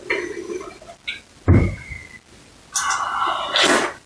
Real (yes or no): yes